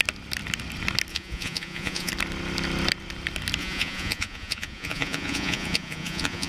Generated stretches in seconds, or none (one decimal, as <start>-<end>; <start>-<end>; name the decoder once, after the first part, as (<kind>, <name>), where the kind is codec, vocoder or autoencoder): 1.1-2.1 (vocoder, Vocos); 3.6-6.5